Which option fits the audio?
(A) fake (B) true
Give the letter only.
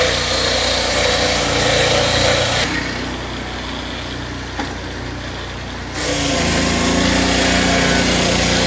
B